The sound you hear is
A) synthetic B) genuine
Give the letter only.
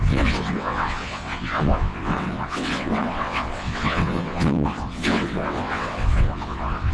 A